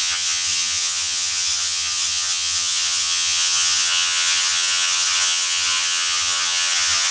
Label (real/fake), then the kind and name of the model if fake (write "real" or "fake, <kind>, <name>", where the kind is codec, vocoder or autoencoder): fake, vocoder, HiFi-GAN